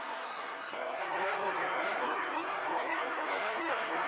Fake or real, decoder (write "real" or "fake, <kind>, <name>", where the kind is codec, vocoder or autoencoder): fake, codec, SNAC